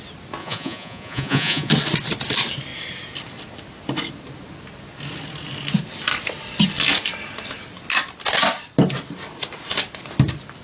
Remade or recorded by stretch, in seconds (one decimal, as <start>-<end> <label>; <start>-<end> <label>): 0.0-0.4 recorded; 0.4-1.7 remade; 1.7-10.6 recorded